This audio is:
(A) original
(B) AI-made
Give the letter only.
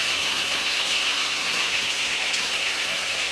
B